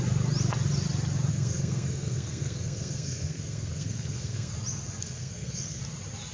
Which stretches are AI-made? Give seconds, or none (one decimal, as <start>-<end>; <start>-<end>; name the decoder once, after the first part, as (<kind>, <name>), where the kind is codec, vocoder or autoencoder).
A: 1.3-4.5 (codec, SNAC); 5.0-5.8